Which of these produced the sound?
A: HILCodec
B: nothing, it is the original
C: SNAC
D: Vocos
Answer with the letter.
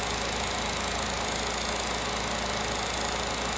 B